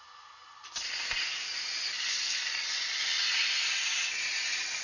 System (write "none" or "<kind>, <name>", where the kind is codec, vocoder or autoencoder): none